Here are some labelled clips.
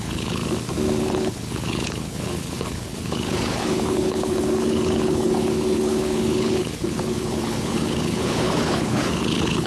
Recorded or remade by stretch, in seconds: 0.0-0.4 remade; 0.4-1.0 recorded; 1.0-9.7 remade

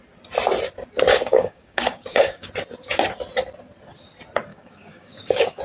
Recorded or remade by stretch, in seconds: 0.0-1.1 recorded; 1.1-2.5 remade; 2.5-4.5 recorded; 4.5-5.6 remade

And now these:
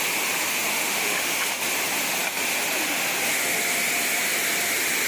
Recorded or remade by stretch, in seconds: 0.0-0.7 recorded; 0.7-1.6 remade; 1.6-5.1 recorded